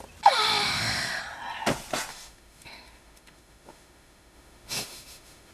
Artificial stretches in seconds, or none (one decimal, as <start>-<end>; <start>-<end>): 0.6-1.2; 2.1-5.5